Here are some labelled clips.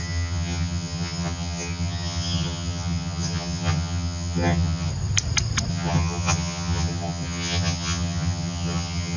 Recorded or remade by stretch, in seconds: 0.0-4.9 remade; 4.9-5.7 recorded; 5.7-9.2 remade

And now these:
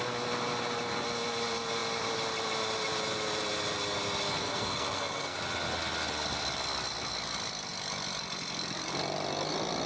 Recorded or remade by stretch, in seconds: 0.0-4.4 recorded; 4.4-5.4 remade; 5.4-9.9 recorded

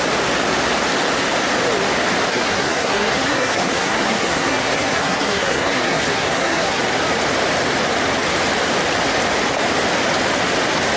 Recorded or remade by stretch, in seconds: 0.0-2.3 recorded; 2.3-6.8 remade; 6.8-11.0 recorded

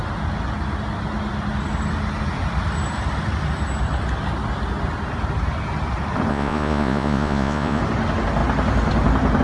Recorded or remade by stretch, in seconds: 0.0-6.3 recorded; 6.3-7.8 remade; 7.8-9.4 recorded

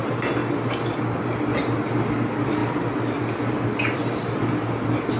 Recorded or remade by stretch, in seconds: 0.0-5.2 recorded

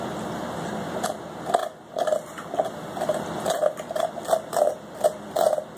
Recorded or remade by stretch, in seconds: 0.0-5.8 recorded